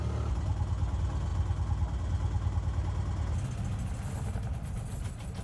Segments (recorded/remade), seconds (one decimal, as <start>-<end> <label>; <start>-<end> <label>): 0.0-5.4 recorded